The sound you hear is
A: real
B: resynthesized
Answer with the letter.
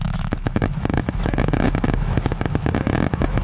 B